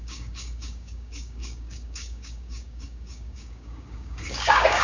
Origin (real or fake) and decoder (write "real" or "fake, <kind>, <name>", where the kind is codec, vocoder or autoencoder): fake, codec, DAC